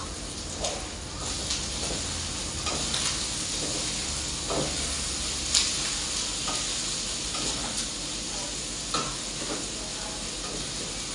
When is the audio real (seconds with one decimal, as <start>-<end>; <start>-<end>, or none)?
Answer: 0.0-11.1